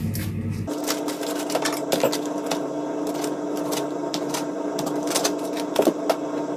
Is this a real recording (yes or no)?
yes